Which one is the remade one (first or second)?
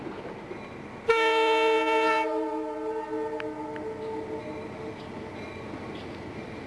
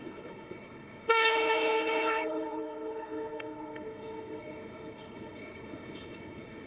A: second